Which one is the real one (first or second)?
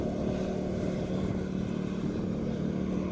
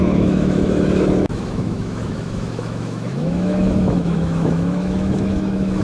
first